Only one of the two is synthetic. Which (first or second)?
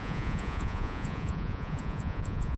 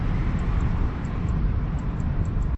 first